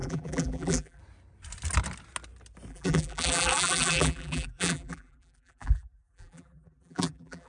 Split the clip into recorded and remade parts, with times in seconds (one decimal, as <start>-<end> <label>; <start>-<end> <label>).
0.0-1.0 remade; 1.0-2.7 recorded; 2.7-7.5 remade